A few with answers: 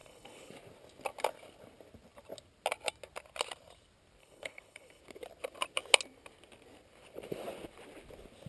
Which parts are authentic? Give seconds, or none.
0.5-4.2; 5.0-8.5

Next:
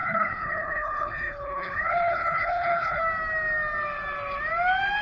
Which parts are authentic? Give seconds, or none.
3.0-5.0